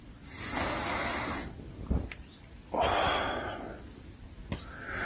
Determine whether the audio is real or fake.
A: real